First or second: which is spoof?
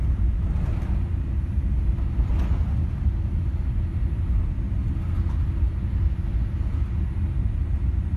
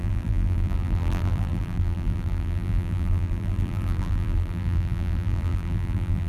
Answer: second